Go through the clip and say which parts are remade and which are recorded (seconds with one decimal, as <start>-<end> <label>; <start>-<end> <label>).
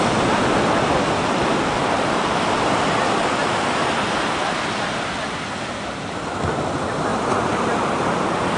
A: 0.0-8.6 recorded